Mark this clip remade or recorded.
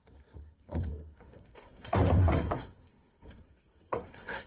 remade